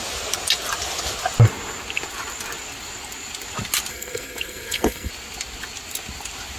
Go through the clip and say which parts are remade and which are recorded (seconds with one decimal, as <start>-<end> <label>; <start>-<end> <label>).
0.0-3.9 recorded; 3.9-5.1 remade; 5.1-6.6 recorded